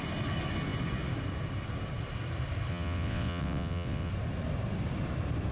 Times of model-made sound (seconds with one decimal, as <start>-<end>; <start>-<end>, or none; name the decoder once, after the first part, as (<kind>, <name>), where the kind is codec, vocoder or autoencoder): 2.7-4.1 (vocoder, WaveNeXt)